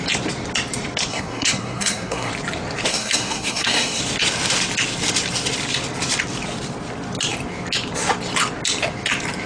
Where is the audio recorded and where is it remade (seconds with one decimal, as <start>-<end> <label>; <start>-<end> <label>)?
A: 0.0-1.1 recorded; 1.1-2.3 remade; 2.3-2.9 recorded; 2.9-4.0 remade; 4.0-9.5 recorded

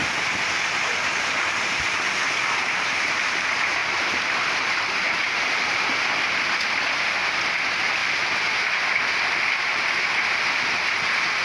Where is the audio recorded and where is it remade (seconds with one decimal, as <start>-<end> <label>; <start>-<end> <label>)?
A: 0.0-0.6 remade; 0.6-3.8 recorded; 3.8-7.5 remade; 7.5-11.4 recorded

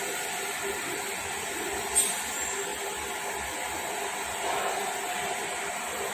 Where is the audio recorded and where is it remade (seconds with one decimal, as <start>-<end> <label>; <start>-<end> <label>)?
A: 0.0-6.1 recorded

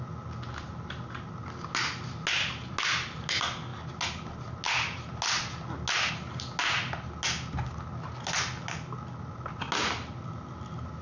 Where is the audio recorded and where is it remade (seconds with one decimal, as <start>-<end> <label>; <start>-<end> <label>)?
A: 0.0-11.0 recorded

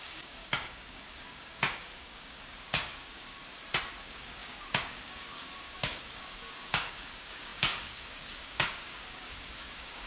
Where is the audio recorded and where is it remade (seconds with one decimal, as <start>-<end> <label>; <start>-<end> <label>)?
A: 0.0-3.4 remade; 3.4-4.0 recorded; 4.0-10.1 remade

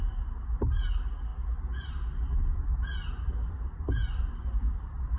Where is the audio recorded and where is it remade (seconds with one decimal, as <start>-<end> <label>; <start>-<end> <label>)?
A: 0.0-5.2 recorded

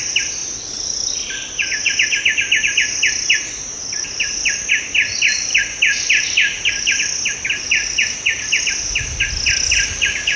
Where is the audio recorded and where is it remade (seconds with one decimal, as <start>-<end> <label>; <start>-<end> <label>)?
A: 0.0-10.4 recorded

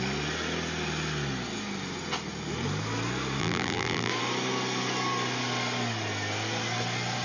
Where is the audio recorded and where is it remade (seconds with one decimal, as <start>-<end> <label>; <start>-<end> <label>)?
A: 0.0-3.4 recorded; 3.4-4.1 remade; 4.1-7.2 recorded